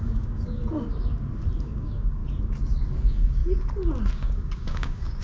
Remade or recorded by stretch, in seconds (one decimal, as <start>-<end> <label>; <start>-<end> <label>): 0.0-0.6 remade; 0.6-1.6 recorded; 1.6-2.2 remade; 2.2-3.0 recorded; 3.0-3.4 remade; 3.4-4.1 recorded; 4.1-5.2 remade